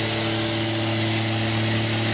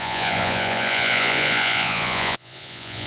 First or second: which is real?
first